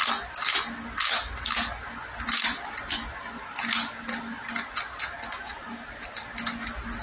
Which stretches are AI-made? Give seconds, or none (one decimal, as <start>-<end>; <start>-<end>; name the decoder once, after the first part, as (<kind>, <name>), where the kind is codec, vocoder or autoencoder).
none

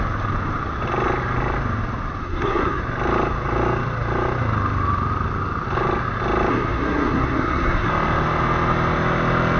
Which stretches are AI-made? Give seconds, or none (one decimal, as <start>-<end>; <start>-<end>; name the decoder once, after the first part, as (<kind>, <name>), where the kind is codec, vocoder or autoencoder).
2.2-2.8 (codec, SNAC); 6.5-7.9

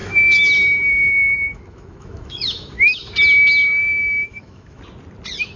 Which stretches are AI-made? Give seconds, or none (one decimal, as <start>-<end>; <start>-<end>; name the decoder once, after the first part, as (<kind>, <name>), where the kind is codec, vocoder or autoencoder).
0.0-1.1 (autoencoder, DAC-VAE); 1.5-3.1; 3.8-4.8

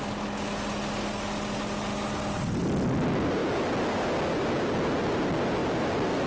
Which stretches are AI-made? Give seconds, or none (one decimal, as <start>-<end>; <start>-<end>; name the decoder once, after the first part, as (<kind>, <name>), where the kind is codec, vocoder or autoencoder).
none

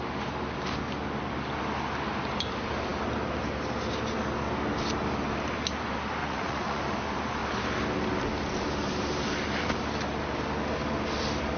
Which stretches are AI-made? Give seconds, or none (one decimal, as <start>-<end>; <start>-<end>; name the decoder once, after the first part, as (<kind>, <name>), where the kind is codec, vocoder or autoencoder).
6.2-6.8 (vocoder, Vocos)

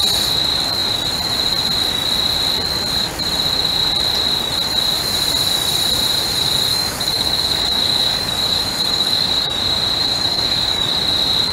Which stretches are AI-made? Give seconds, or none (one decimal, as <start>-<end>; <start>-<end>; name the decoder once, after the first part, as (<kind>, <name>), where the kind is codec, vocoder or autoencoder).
6.7-9.6 (codec, DAC); 10.0-10.9